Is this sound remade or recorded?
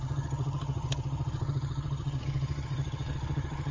remade